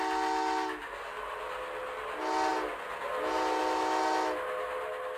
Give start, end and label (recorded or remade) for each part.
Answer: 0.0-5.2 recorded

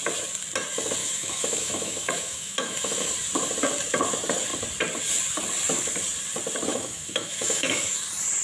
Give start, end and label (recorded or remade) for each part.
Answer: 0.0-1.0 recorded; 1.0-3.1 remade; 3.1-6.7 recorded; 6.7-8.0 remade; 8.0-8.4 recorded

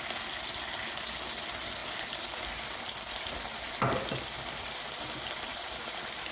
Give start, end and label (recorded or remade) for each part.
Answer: 0.0-6.3 recorded